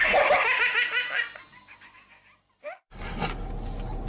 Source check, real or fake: real